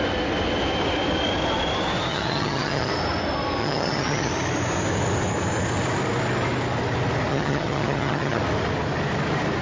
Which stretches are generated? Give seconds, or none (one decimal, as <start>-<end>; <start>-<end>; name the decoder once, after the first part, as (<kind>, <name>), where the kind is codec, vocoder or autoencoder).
2.1-2.9 (vocoder, HiFi-GAN); 3.6-4.3; 7.3-8.4